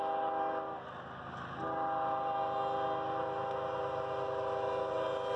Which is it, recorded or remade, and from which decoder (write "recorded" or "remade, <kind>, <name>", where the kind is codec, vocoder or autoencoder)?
recorded